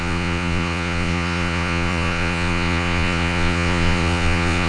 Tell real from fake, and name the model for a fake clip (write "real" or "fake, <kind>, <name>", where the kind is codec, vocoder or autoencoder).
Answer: fake, vocoder, Vocos